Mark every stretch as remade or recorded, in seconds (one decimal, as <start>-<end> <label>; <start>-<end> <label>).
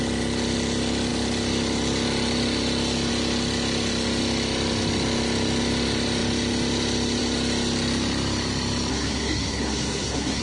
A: 0.0-8.9 recorded; 8.9-10.4 remade